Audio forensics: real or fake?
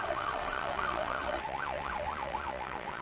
fake